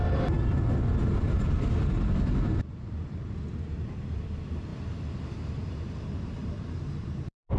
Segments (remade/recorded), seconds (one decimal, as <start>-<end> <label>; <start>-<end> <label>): 0.0-4.7 remade; 4.7-5.6 recorded; 5.6-7.6 remade